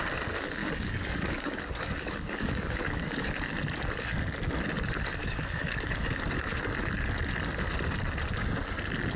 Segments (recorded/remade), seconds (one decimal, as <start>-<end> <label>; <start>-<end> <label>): 0.0-0.6 recorded; 0.6-3.3 remade; 3.3-5.2 recorded; 5.2-6.6 remade; 6.6-9.2 recorded